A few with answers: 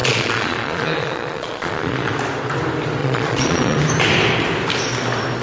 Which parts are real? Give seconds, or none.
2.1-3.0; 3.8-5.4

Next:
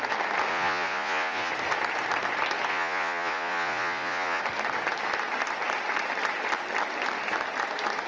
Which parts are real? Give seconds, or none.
0.0-0.5; 1.5-2.7; 4.4-8.1

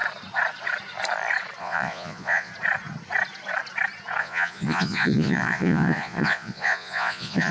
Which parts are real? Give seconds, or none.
0.0-1.6; 2.5-4.2

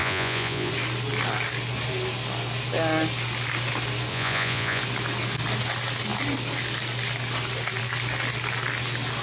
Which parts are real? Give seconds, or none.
0.7-4.1; 4.8-9.2